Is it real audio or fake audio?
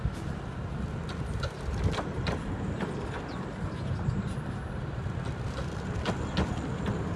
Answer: real